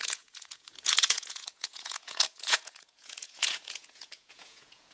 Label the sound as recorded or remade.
remade